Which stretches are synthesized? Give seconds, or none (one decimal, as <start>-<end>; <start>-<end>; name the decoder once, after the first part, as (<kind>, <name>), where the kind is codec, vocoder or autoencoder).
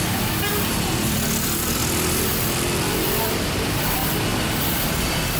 0.0-1.8 (vocoder, BigVGAN v2); 3.1-4.0; 4.7-5.4